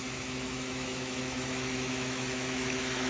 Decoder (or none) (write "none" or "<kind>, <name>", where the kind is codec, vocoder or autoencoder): autoencoder, DAC-VAE